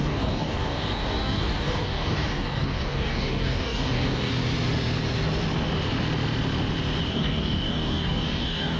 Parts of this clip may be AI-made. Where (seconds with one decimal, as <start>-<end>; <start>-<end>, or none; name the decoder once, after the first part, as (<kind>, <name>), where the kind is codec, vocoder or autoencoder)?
0.0-4.3 (codec, DAC); 7.1-8.8